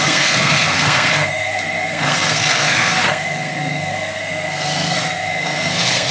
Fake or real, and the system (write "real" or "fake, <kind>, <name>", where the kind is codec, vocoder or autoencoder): fake, codec, SNAC